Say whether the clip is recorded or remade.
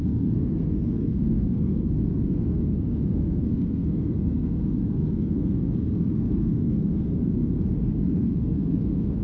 remade